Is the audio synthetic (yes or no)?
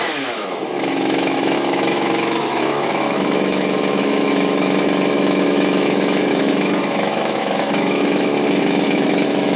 yes